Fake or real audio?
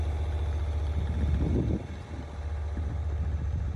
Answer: real